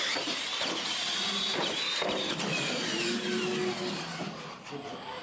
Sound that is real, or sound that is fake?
real